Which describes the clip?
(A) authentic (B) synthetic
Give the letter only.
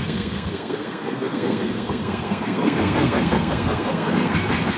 B